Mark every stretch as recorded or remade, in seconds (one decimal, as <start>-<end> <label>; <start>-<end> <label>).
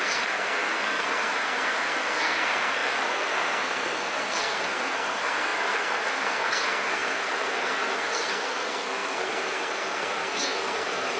0.0-11.2 remade